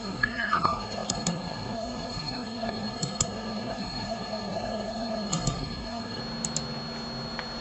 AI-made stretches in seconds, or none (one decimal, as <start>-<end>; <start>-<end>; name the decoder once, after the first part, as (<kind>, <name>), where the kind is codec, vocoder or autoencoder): 0.0-6.2 (codec, SNAC)